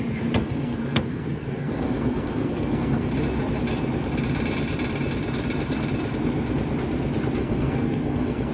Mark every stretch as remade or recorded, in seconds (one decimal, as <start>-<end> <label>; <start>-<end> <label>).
0.0-0.4 recorded; 0.4-3.1 remade; 3.1-7.4 recorded; 7.4-8.5 remade